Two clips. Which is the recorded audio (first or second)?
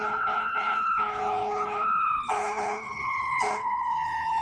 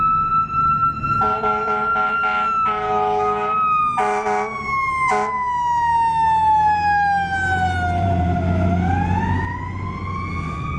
second